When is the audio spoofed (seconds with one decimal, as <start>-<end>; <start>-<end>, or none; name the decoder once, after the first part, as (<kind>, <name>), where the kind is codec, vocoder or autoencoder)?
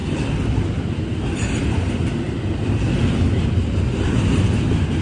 none